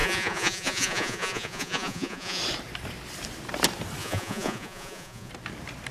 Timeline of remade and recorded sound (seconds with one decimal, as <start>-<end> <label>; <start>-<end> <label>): 0.0-2.4 remade; 2.4-4.0 recorded; 4.0-5.3 remade; 5.3-5.9 recorded